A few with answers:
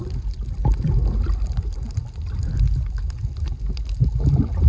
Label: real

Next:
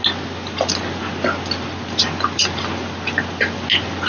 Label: real